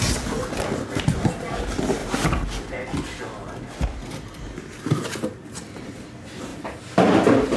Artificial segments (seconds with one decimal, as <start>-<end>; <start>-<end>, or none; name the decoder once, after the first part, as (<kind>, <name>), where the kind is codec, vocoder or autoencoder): none